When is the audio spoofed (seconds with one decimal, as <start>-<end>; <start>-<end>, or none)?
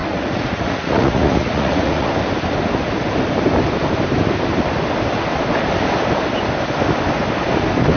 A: 0.0-2.1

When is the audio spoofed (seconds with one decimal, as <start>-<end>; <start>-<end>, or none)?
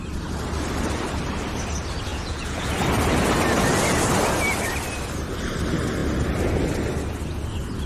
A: 2.1-2.7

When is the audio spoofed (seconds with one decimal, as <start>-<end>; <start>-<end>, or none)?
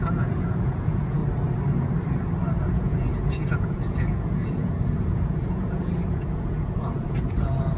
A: 0.0-1.2; 2.6-7.8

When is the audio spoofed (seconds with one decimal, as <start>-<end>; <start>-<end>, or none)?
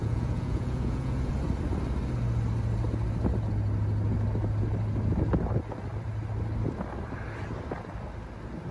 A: 0.0-1.3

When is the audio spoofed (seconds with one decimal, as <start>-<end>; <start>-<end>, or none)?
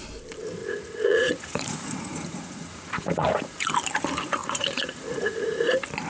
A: 0.6-3.7; 4.4-5.4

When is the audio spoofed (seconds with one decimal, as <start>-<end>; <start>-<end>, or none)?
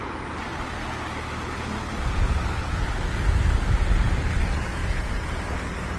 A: 4.8-5.4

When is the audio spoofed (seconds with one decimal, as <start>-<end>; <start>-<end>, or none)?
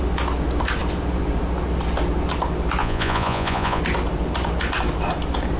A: 2.8-3.8